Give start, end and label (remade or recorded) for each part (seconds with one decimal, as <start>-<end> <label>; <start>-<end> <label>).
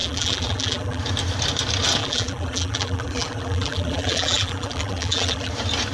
0.0-1.0 remade; 1.0-2.0 recorded; 2.0-5.5 remade; 5.5-5.9 recorded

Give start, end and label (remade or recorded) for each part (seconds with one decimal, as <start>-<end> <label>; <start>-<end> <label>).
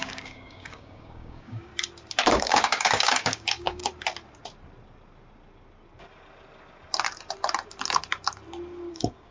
0.0-1.7 remade; 1.7-2.3 recorded; 2.3-3.8 remade; 3.8-8.9 recorded; 8.9-9.3 remade